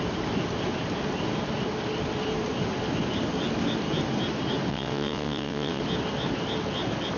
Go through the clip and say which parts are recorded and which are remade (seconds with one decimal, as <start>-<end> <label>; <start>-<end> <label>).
0.0-4.7 recorded; 4.7-5.8 remade; 5.8-7.2 recorded

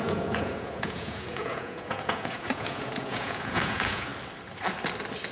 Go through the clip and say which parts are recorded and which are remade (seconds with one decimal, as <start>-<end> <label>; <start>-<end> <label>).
0.0-4.1 remade; 4.1-5.3 recorded